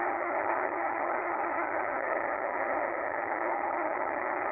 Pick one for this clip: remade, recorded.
remade